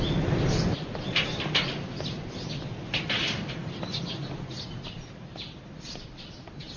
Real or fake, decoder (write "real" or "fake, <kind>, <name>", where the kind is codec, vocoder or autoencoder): real